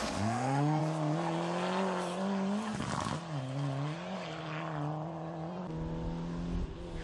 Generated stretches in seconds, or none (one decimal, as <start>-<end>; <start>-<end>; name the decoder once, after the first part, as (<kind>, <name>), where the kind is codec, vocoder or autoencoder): 0.0-0.8 (autoencoder, DAC-VAE)

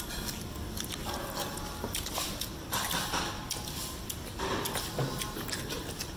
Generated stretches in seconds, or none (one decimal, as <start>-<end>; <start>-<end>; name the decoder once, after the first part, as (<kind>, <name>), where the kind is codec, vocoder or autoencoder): none

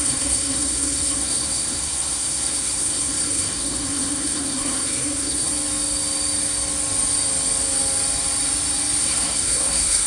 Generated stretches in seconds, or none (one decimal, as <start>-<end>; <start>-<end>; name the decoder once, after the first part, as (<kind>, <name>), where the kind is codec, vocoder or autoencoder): 0.0-5.5 (codec, SNAC); 9.0-10.1